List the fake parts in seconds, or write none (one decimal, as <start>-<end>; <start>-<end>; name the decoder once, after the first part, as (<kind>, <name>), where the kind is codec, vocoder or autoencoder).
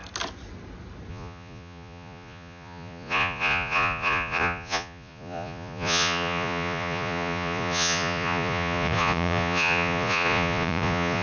1.1-11.2 (vocoder, Vocos)